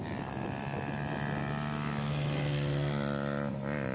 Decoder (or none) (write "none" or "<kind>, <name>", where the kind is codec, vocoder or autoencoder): none